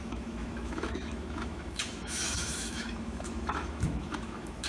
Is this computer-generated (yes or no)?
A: yes